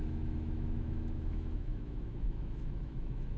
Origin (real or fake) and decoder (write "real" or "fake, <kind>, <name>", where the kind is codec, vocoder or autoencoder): fake, autoencoder, DAC-VAE